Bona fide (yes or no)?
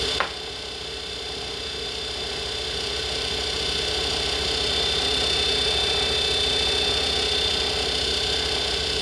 yes